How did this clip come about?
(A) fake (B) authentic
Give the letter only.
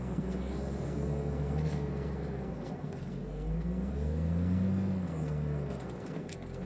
A